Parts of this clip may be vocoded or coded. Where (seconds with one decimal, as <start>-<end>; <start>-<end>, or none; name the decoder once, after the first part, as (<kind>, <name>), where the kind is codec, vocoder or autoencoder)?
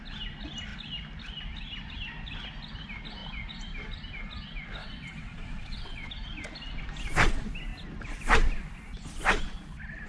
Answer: 4.8-6.1 (vocoder, WaveNeXt)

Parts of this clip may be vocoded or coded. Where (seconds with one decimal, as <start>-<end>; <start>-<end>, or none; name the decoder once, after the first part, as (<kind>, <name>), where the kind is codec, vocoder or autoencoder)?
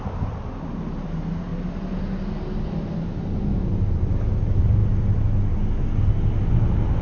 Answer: none